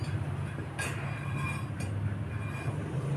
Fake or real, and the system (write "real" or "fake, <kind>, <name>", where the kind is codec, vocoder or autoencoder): real